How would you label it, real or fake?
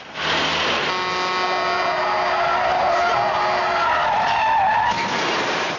real